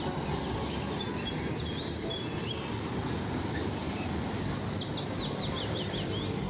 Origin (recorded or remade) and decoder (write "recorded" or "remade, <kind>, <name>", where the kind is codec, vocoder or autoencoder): recorded